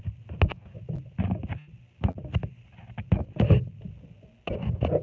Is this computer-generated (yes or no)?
no